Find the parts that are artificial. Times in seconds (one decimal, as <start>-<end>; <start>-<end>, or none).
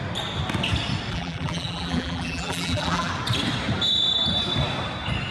1.1-3.1